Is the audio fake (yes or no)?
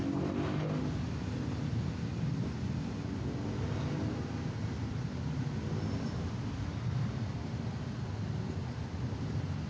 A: no